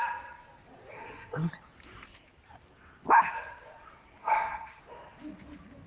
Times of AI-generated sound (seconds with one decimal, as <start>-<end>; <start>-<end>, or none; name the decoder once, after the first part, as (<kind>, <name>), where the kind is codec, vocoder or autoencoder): 0.9-1.5 (codec, SNAC); 4.2-4.8